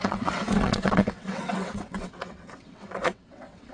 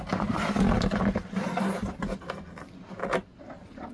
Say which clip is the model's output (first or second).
first